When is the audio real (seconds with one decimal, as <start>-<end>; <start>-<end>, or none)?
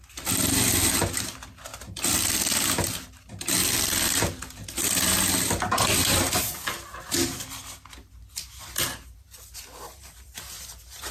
0.0-11.1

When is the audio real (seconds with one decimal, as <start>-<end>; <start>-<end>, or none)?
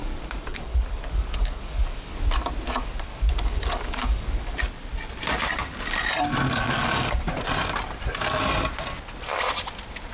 2.2-3.1; 4.6-6.5; 7.3-10.1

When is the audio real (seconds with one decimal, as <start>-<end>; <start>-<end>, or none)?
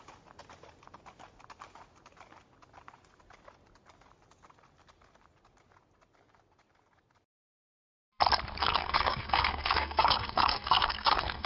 0.0-8.6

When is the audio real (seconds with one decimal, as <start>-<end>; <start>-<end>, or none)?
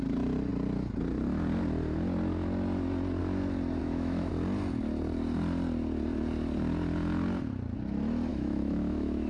0.0-3.8; 4.3-8.3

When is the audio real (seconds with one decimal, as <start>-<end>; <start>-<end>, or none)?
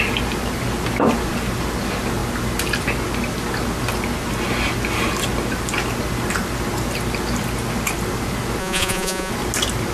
0.0-8.6; 9.3-9.9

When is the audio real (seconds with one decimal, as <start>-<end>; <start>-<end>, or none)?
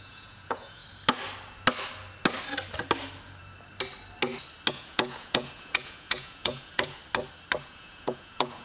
0.8-4.7; 7.0-7.6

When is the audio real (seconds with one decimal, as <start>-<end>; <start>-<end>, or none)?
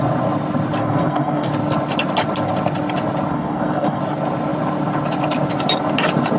0.0-0.8; 1.5-3.3; 4.0-6.4